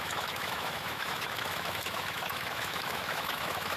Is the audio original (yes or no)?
no